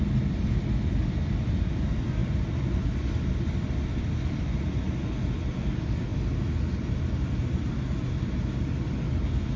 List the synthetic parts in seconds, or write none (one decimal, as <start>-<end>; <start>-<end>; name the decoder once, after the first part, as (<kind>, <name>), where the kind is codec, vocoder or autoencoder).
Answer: none